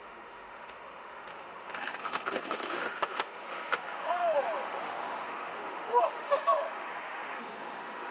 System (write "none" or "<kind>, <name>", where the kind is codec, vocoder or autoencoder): autoencoder, DAC-VAE